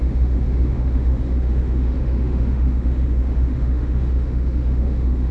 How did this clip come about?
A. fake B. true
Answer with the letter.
A